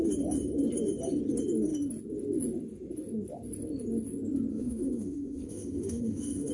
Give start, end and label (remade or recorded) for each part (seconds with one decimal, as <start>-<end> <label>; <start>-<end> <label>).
0.0-4.5 recorded; 4.5-6.5 remade